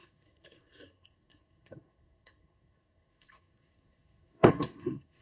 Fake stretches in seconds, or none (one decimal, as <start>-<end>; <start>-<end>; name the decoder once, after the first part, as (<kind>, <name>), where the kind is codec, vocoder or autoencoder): 0.0-5.2 (codec, SNAC)